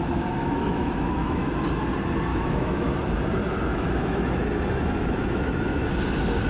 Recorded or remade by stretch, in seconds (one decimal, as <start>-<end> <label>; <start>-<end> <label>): 0.0-0.4 recorded; 0.4-1.5 remade; 1.5-2.3 recorded; 2.3-2.9 remade; 2.9-3.7 recorded; 3.7-5.9 remade; 5.9-6.5 recorded